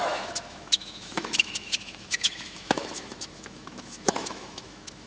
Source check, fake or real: fake